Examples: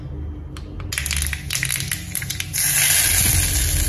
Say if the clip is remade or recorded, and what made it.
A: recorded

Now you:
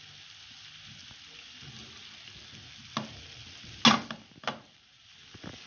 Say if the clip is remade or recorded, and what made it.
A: recorded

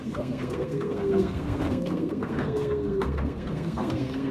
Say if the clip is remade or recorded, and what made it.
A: remade, codec, SNAC